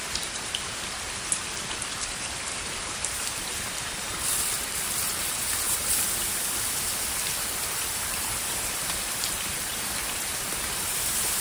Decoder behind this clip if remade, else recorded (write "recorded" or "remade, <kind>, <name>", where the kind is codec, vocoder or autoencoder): remade, vocoder, BigVGAN v2